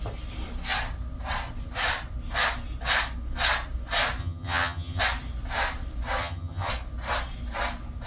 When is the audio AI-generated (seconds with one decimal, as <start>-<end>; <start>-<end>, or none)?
4.2-5.0; 6.2-6.7

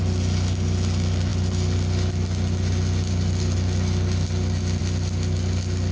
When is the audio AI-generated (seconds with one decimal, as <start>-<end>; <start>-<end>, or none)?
none

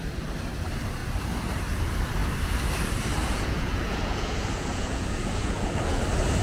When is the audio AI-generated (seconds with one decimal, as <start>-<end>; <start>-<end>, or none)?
3.2-6.0

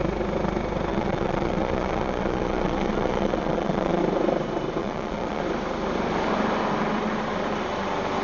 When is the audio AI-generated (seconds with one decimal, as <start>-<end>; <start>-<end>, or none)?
0.9-4.0; 4.8-5.4

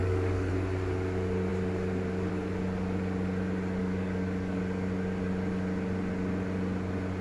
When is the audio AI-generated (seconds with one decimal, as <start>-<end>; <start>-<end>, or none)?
0.0-0.5; 3.8-4.6

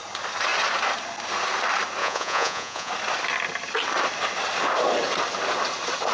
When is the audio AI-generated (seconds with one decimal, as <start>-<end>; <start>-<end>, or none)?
2.0-2.9

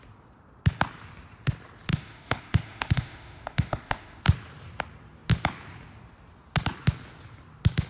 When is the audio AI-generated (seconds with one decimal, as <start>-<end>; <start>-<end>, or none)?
1.9-4.2

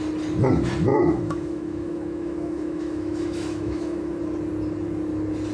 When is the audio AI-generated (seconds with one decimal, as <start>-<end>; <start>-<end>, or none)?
0.9-4.2